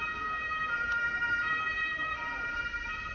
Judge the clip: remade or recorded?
recorded